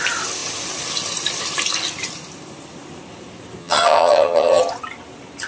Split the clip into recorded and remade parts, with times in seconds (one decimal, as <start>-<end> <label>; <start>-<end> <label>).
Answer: 0.0-3.6 recorded; 3.6-4.6 remade; 4.6-5.5 recorded